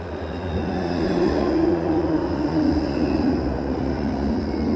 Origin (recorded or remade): remade